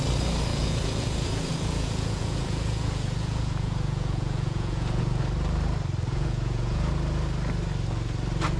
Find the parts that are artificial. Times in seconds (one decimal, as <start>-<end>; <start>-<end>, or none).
0.5-5.2; 6.1-6.9